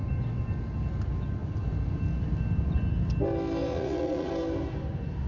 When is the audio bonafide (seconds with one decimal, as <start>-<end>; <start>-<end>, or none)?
0.0-3.7; 4.3-5.3